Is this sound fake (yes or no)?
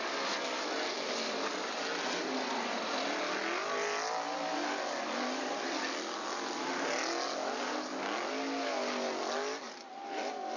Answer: no